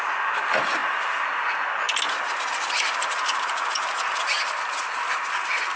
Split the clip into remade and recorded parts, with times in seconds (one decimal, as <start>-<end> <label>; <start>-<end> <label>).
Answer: 0.0-5.8 recorded